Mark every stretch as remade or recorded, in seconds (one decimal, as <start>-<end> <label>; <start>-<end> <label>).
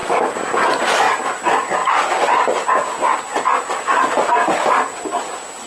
0.0-5.7 recorded